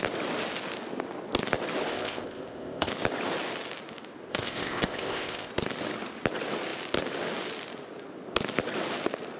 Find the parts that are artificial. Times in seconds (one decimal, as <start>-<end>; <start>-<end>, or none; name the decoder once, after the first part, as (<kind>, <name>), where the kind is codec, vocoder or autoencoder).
1.9-2.9 (codec, ZipCodec); 4.3-5.5